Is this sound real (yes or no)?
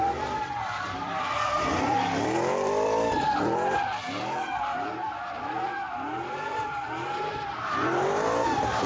no